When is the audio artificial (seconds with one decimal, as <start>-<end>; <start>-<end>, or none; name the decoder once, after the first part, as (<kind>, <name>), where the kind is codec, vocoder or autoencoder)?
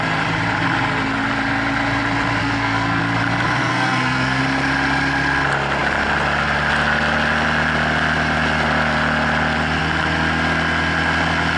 2.4-3.0 (codec, SNAC); 3.6-4.4